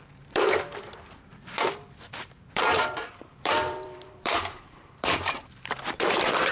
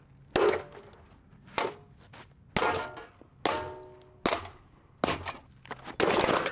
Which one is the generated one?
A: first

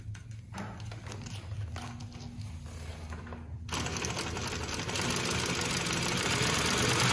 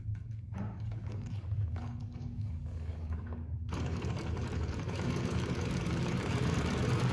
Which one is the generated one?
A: second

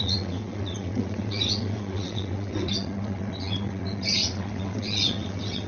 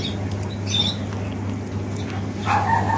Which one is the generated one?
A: first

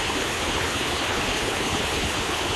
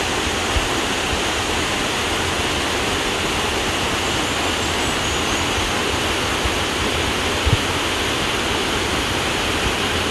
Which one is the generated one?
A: first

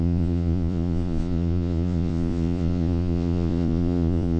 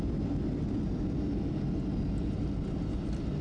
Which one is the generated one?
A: first